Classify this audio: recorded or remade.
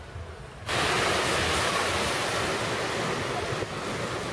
recorded